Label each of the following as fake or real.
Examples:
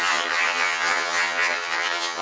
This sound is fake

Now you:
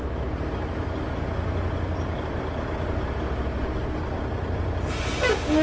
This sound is real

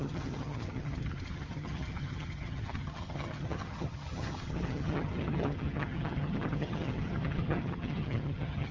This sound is fake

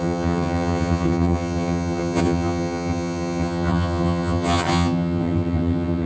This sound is fake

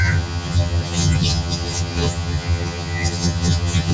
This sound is fake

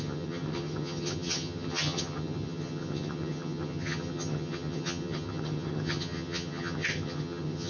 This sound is fake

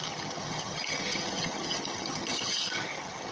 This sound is fake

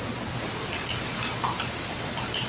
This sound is real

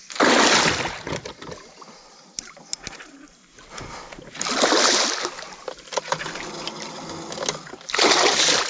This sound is real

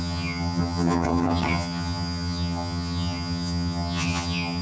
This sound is fake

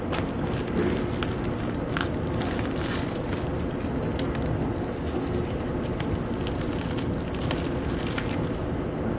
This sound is real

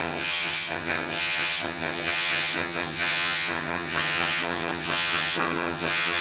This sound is fake